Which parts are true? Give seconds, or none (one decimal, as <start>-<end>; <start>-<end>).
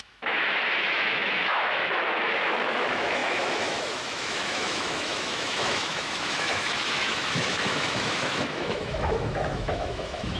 none